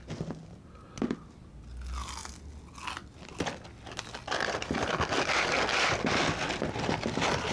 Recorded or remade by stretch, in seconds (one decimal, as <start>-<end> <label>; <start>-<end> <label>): 0.0-7.5 recorded